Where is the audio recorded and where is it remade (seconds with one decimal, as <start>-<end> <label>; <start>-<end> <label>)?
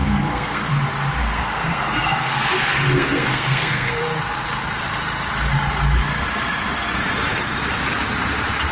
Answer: 0.0-0.7 remade; 0.7-1.2 recorded; 1.2-4.0 remade; 4.0-8.7 recorded